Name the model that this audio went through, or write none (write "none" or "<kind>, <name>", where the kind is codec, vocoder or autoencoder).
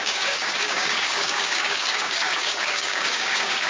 codec, DAC